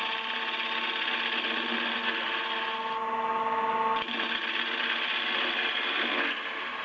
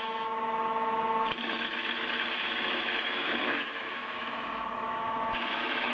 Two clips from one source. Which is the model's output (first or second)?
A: second